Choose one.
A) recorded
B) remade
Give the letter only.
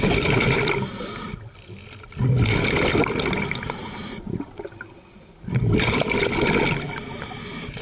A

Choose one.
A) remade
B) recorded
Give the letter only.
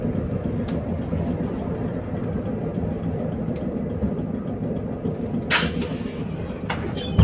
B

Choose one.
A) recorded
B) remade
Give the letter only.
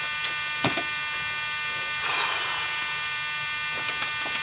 A